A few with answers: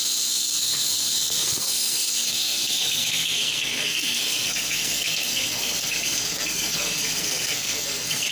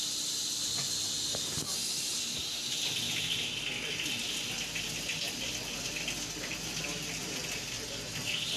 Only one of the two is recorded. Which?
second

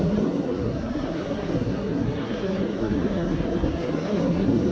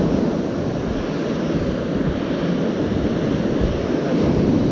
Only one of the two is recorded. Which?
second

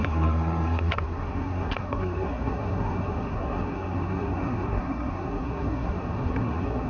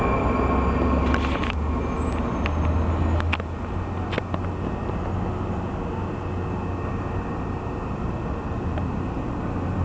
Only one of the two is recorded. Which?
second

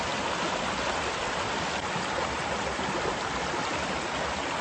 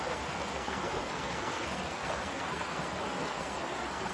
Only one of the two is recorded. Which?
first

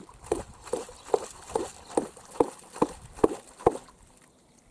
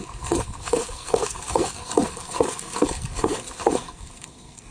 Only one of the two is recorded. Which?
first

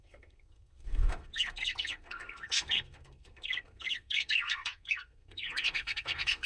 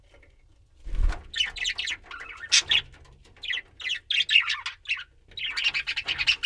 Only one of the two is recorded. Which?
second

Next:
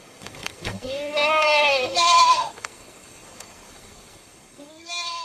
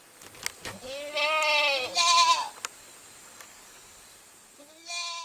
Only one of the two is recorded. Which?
second